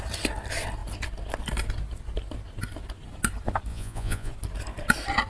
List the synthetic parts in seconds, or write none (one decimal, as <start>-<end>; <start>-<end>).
3.7-4.3